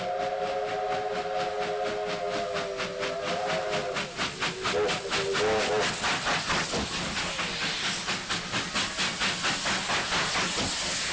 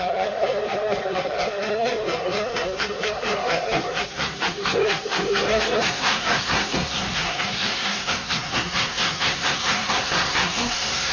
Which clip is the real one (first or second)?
first